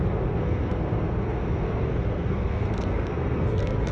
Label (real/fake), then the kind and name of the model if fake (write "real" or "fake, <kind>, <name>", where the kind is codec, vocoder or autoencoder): fake, codec, SNAC